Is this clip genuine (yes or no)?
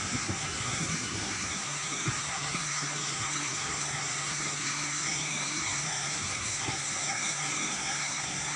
no